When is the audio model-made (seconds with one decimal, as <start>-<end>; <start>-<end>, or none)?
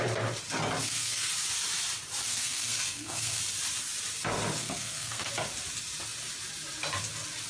0.8-1.3; 2.2-3.4; 4.6-5.3